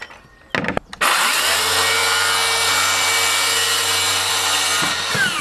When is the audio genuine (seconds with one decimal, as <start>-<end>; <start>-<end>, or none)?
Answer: 0.0-5.4